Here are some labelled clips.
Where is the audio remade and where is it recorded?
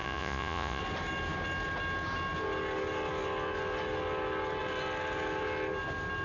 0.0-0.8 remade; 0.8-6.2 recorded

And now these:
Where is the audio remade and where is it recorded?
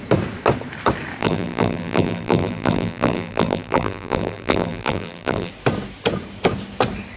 0.0-1.2 recorded; 1.2-5.5 remade; 5.5-7.2 recorded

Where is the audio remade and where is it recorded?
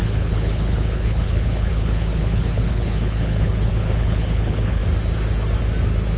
0.0-4.8 remade; 4.8-6.2 recorded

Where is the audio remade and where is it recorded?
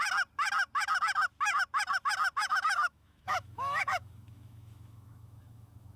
0.0-2.4 recorded; 2.4-6.0 remade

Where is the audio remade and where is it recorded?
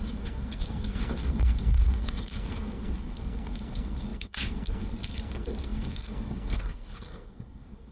0.0-7.9 remade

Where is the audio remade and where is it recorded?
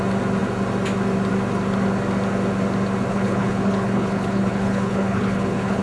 0.0-3.1 recorded; 3.1-5.8 remade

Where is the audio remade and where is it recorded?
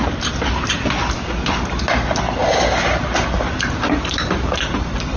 0.0-5.2 recorded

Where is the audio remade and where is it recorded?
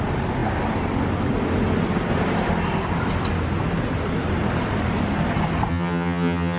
0.0-5.7 recorded; 5.7-6.6 remade